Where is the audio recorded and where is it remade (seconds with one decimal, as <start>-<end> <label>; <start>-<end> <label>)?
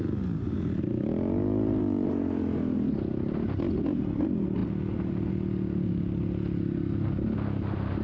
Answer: 0.0-8.0 recorded